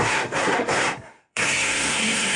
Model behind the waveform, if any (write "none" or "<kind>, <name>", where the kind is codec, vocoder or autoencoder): codec, SNAC